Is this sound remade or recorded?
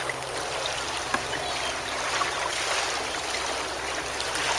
recorded